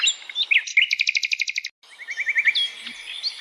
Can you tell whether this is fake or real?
real